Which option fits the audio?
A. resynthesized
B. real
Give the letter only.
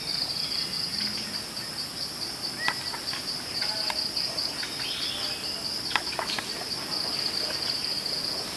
B